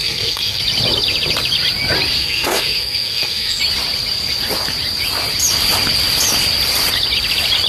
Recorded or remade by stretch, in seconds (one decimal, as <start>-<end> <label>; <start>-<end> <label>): 0.0-0.6 remade; 0.6-2.2 recorded; 2.2-3.6 remade; 3.6-7.7 recorded

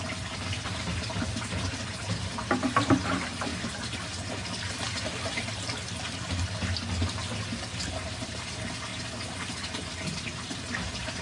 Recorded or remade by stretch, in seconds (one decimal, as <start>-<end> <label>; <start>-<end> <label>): 0.0-11.2 recorded

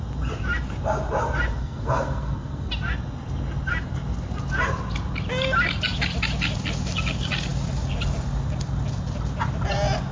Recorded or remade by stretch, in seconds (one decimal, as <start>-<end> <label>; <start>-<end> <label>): 0.0-1.6 recorded; 1.6-2.7 remade; 2.7-10.1 recorded

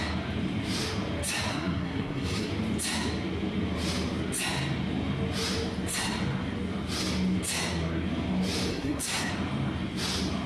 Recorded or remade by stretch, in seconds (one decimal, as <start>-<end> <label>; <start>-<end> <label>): 0.0-1.5 recorded; 1.5-2.5 remade; 2.5-8.7 recorded; 8.7-9.3 remade; 9.3-10.5 recorded

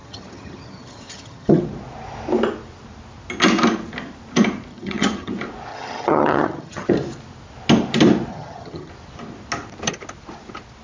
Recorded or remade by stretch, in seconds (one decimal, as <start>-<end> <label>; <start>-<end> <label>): 0.0-1.6 remade; 1.6-4.7 recorded; 4.7-5.3 remade; 5.3-5.7 recorded; 5.7-6.9 remade; 6.9-8.3 recorded; 8.3-8.9 remade; 8.9-10.8 recorded

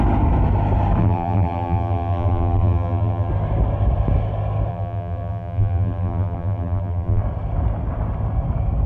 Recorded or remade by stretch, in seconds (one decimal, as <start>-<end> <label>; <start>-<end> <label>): 0.0-1.0 recorded; 1.0-3.3 remade; 3.3-4.7 recorded; 4.7-7.2 remade; 7.2-8.9 recorded

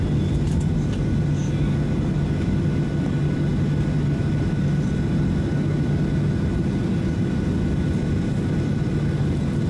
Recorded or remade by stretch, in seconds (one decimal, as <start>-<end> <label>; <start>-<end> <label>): 0.0-9.7 recorded